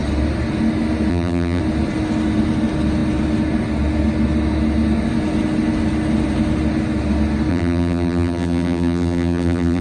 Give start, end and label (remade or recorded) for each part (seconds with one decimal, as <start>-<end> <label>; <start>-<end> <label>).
0.0-1.1 recorded; 1.1-1.6 remade; 1.6-7.5 recorded; 7.5-9.8 remade